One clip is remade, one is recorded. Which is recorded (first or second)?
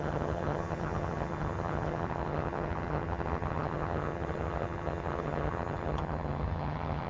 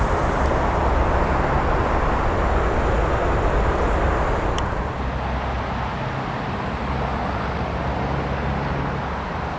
second